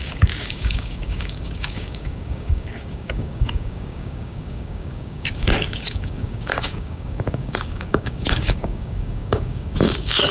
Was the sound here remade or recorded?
remade